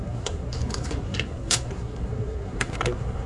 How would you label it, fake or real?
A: fake